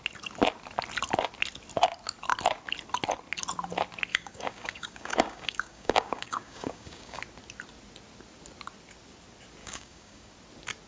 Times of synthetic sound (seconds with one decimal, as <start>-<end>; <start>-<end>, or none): 4.1-7.2; 9.6-10.3